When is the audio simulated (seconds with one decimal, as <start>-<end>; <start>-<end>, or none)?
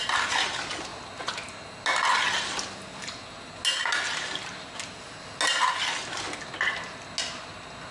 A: none